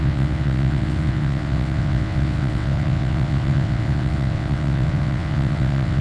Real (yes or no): no